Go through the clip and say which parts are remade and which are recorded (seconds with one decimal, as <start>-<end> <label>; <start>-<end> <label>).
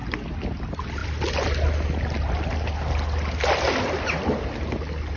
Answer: 0.0-5.2 recorded